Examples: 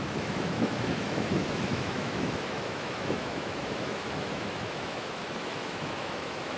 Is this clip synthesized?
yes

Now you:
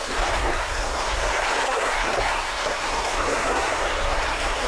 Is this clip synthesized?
yes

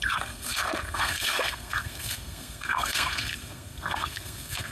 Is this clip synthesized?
yes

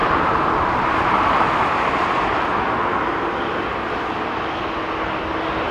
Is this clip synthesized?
no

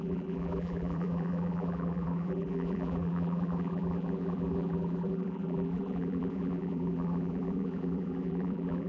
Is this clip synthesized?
yes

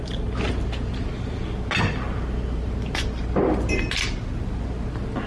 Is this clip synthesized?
no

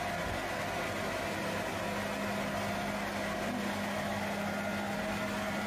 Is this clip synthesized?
no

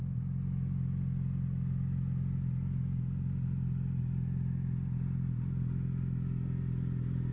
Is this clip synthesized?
no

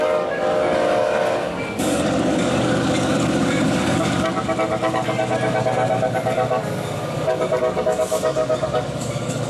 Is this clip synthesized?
yes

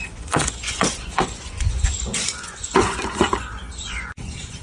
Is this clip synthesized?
yes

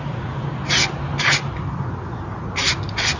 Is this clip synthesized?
no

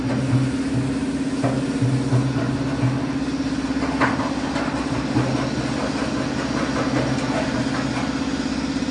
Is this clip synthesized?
no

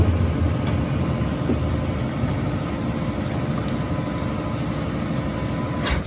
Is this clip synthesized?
no